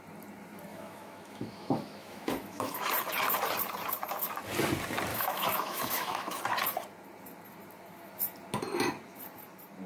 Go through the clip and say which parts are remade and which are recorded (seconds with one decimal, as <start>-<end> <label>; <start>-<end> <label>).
0.0-0.7 recorded; 0.7-2.9 remade; 2.9-5.1 recorded; 5.1-6.4 remade; 6.4-9.9 recorded